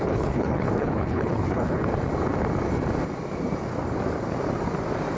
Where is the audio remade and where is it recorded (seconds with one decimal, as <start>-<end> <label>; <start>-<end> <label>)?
0.0-1.8 remade; 1.8-5.2 recorded